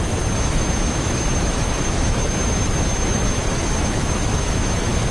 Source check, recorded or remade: remade